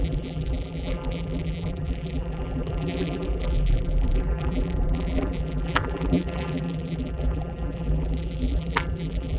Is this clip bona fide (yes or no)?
no